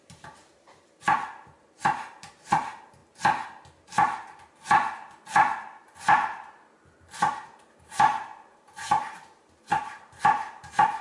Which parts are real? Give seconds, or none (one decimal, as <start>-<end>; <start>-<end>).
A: 3.0-7.7